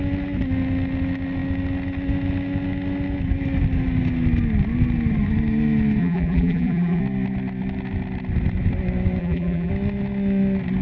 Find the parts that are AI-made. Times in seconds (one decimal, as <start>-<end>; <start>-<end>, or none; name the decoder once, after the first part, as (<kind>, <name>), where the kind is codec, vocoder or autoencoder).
6.0-7.0 (vocoder, BigVGAN v2); 9.2-9.7